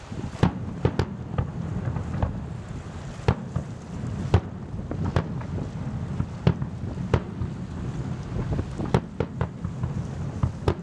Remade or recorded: recorded